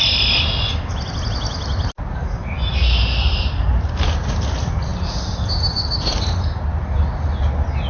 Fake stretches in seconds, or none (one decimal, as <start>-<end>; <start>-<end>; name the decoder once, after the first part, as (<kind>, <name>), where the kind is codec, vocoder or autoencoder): none